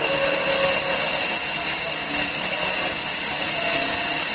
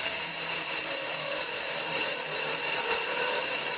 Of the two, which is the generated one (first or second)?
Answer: second